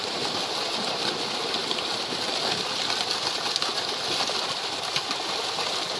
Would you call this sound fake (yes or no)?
no